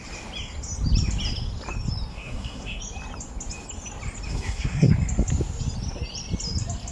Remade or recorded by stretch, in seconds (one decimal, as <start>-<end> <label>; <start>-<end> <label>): 0.0-2.1 recorded; 2.1-2.8 remade; 2.8-4.3 recorded; 4.3-4.9 remade; 4.9-6.9 recorded